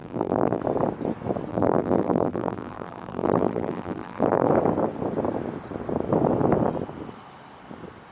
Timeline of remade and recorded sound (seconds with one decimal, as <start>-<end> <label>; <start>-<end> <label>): 0.0-0.6 remade; 0.6-1.5 recorded; 1.5-4.5 remade; 4.5-8.1 recorded